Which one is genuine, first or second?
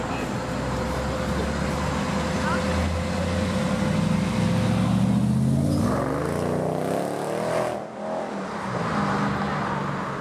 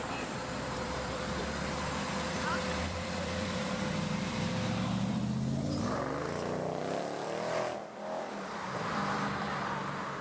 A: first